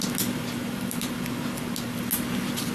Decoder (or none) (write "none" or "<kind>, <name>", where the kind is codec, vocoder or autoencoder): none